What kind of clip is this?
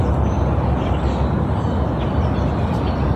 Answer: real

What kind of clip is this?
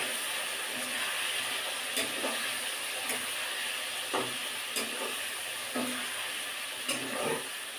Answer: real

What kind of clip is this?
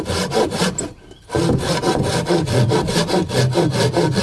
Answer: real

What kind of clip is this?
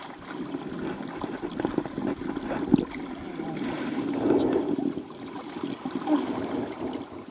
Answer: real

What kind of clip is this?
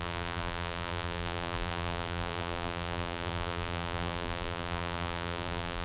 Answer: fake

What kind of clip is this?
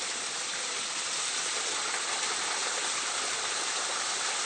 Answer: real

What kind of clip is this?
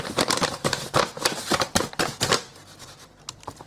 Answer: real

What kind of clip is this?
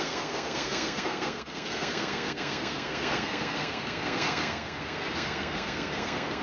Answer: fake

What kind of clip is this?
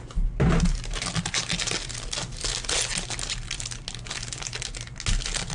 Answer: real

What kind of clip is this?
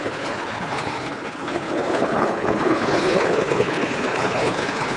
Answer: fake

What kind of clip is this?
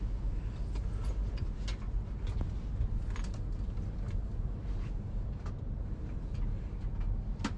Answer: real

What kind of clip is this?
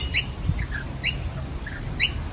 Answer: real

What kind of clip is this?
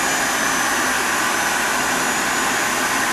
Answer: real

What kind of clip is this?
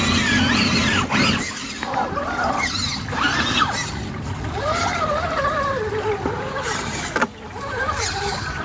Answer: real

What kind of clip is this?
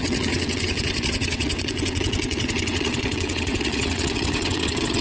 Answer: fake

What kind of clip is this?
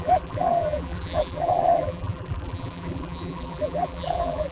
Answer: fake